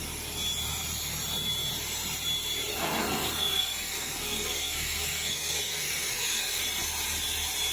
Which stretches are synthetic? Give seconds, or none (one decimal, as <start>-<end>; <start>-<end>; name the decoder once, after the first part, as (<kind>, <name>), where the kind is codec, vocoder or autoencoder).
2.7-6.6 (codec, SNAC)